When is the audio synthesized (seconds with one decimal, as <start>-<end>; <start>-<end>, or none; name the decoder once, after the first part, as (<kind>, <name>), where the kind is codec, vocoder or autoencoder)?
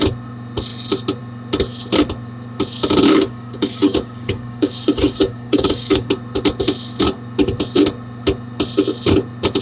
3.1-6.1 (codec, DAC)